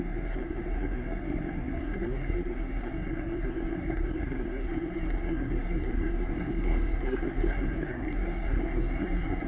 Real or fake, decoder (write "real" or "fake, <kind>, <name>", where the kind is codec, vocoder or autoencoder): fake, codec, SNAC